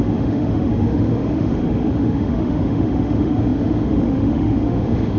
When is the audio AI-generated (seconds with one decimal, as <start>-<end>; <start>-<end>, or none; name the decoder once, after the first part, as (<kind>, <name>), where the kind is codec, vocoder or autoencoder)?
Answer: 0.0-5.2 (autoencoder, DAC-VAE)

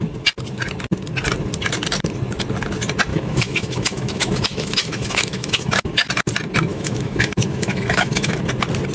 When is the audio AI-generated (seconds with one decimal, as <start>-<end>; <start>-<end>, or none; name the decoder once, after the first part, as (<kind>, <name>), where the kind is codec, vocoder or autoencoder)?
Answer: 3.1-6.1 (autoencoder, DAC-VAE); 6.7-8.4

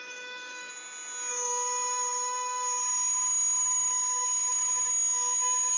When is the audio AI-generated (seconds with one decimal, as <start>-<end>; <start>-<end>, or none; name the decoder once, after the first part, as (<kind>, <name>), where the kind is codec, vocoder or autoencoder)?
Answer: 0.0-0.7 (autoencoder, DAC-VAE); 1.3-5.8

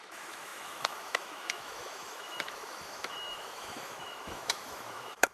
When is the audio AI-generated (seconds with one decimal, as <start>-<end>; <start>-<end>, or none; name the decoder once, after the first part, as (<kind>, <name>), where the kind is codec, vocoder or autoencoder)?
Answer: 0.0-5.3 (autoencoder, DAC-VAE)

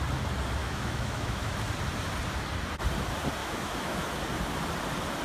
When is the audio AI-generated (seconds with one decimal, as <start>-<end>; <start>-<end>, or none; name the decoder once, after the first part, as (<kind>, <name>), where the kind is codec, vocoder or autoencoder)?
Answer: 0.6-1.5 (autoencoder, DAC-VAE); 3.4-4.2